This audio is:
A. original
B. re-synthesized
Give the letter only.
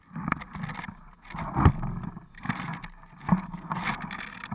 A